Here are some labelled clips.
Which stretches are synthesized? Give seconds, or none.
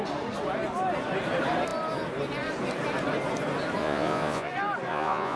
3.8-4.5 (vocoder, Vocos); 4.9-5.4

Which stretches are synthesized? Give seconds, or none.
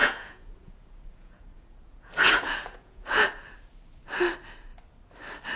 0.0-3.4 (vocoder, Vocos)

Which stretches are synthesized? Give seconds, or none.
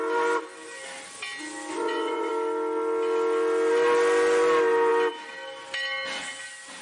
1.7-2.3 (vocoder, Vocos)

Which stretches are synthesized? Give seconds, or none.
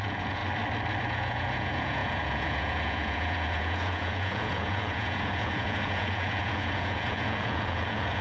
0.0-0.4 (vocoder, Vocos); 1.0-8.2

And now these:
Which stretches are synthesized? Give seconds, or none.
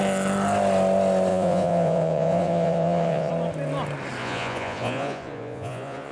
1.3-3.3 (vocoder, Vocos); 4.2-6.1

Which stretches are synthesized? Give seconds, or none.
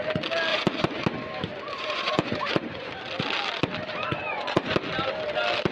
0.5-1.0 (vocoder, Vocos); 1.5-2.9; 4.0-4.7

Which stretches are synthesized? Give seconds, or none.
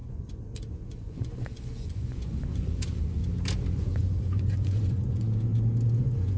0.0-3.2 (vocoder, Vocos); 3.7-5.5; 6.0-6.4